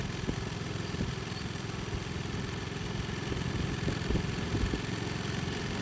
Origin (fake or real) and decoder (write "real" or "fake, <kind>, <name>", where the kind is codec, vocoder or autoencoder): real